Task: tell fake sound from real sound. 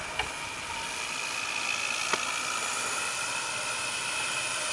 real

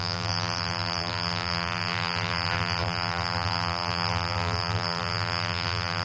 fake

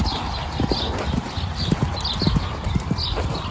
real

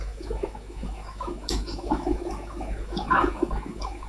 fake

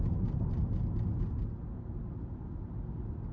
real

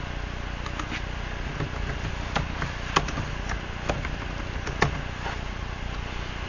real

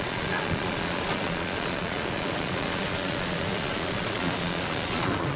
fake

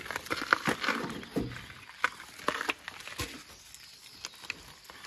real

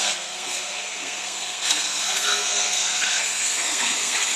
fake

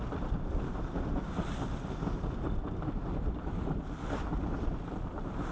real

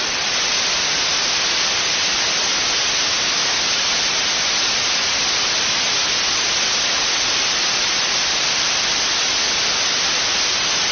real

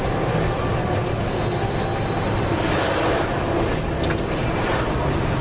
real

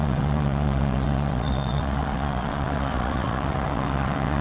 fake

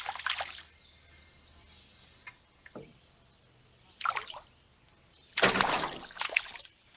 real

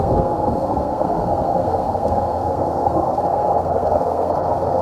fake